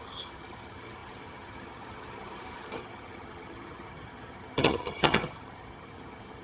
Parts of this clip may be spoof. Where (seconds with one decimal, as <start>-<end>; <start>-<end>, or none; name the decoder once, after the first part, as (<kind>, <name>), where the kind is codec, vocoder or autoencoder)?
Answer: 0.0-6.4 (vocoder, HiFi-GAN)